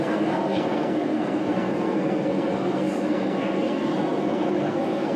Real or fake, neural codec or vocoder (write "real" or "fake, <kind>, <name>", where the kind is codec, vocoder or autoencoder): fake, codec, SNAC